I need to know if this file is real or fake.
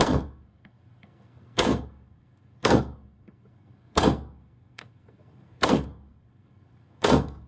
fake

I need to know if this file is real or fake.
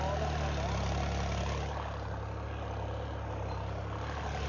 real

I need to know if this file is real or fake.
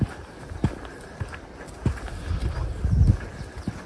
real